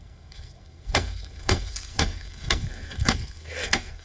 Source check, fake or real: fake